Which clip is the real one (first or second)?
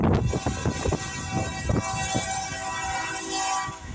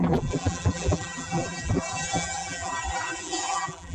first